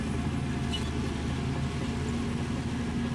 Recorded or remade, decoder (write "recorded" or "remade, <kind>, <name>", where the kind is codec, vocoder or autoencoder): recorded